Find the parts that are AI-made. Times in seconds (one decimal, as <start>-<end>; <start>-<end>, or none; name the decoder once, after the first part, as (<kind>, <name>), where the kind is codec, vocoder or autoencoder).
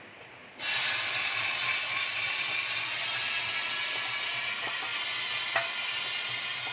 none